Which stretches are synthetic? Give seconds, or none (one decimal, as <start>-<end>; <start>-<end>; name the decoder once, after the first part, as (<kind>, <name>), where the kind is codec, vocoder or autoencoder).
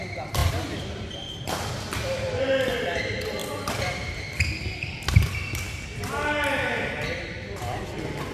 none